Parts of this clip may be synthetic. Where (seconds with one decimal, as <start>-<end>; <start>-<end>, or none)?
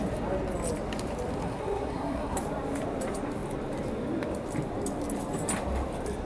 1.4-2.4